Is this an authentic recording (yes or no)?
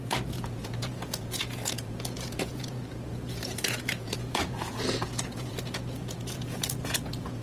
no